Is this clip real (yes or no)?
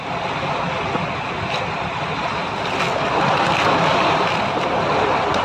yes